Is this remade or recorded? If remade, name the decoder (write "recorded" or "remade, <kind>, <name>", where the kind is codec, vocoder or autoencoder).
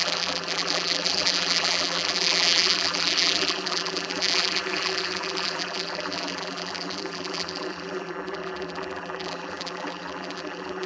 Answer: remade, vocoder, BigVGAN v2